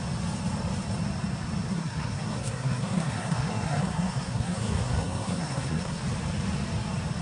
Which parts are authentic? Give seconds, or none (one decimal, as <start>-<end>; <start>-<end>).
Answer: 0.0-1.7; 6.0-7.2